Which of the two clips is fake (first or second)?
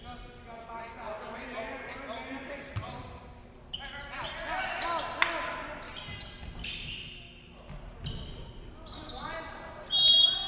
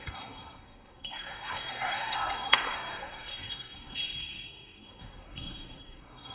second